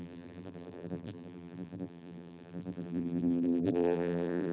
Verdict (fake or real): fake